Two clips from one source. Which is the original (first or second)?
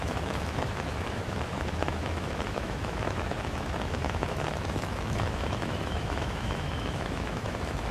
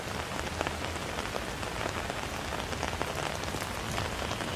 second